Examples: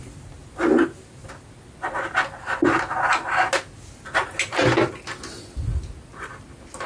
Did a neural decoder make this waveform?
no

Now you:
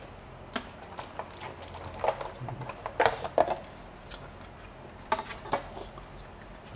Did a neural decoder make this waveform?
no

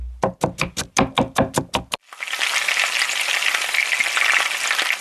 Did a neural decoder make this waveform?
no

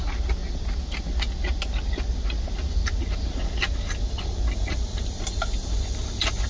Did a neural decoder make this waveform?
no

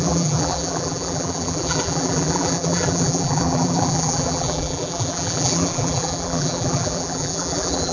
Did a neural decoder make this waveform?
yes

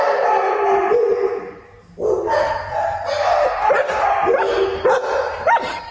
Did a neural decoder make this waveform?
no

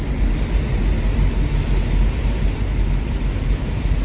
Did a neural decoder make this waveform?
no